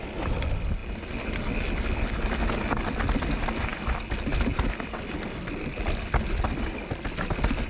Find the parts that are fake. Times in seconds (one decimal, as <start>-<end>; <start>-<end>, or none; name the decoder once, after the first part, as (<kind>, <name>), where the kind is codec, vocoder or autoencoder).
none